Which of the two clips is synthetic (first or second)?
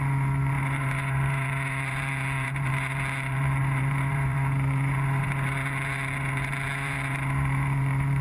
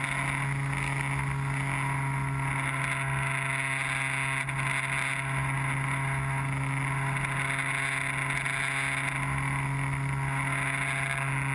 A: first